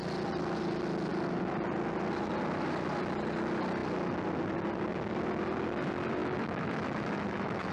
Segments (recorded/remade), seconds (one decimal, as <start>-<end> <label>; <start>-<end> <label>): 0.0-6.2 recorded; 6.2-7.7 remade

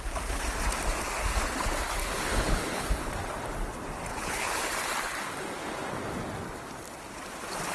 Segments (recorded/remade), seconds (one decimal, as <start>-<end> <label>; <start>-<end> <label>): 0.0-2.0 recorded; 2.0-3.1 remade; 3.1-4.1 recorded; 4.1-4.6 remade; 4.6-7.7 recorded